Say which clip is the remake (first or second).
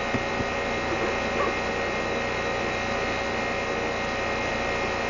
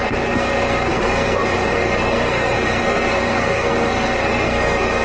second